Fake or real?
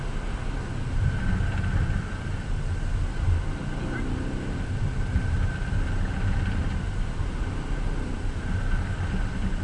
real